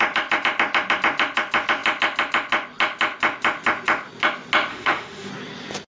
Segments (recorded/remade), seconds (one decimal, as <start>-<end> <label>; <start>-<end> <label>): 0.0-4.7 recorded; 4.7-5.3 remade; 5.3-5.9 recorded